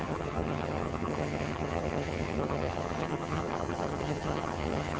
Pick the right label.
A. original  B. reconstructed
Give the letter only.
B